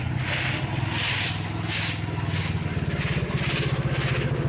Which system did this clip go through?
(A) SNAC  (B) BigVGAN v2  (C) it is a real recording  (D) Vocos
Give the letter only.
C